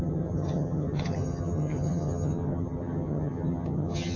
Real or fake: fake